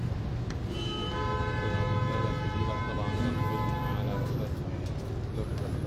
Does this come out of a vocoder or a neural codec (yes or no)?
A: no